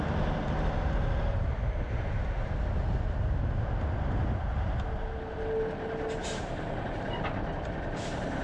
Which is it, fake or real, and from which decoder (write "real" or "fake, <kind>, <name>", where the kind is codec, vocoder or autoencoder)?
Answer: real